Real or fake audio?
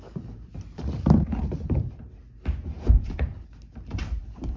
real